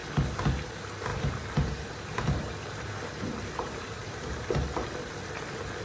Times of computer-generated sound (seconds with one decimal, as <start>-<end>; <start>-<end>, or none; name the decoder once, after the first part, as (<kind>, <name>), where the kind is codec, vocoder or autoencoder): 1.1-4.5 (vocoder, BigVGAN v2)